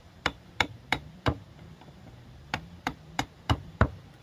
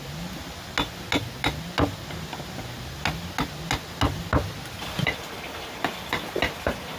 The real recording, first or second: second